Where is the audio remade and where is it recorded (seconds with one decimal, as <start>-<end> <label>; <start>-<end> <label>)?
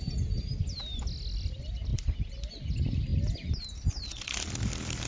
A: 0.0-5.1 recorded